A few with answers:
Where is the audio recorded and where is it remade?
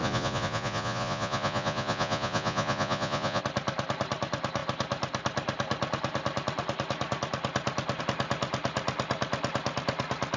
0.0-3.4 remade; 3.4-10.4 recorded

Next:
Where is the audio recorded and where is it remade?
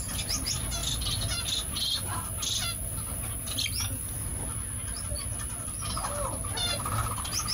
0.0-7.5 recorded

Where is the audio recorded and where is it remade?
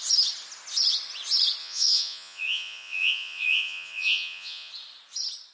0.0-1.6 recorded; 1.6-4.7 remade; 4.7-5.5 recorded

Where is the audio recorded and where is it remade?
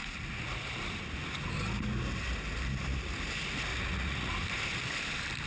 0.0-3.7 recorded; 3.7-4.3 remade; 4.3-5.5 recorded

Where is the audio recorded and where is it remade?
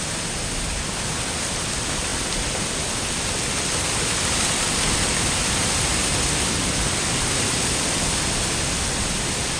0.0-9.6 recorded